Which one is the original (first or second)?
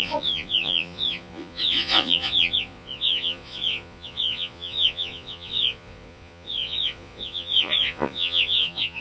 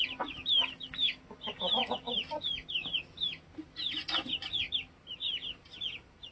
second